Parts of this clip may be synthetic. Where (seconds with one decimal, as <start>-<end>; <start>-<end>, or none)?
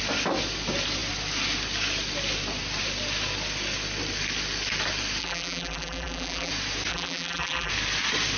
5.2-6.5; 6.9-7.7